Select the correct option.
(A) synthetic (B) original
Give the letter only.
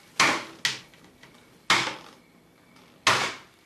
B